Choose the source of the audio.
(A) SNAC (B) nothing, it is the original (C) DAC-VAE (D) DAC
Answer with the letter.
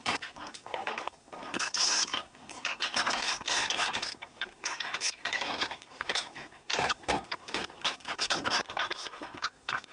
A